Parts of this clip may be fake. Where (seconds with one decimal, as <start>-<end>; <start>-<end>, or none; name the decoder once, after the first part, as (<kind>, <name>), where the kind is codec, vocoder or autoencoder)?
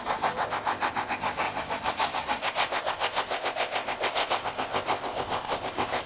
0.4-1.2 (codec, ZipCodec); 2.4-6.1